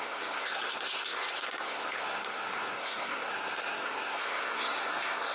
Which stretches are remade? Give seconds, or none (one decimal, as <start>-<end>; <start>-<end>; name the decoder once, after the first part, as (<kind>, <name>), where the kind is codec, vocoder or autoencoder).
0.0-5.3 (codec, SNAC)